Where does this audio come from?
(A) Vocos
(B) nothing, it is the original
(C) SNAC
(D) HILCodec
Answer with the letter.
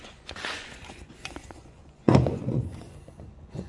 A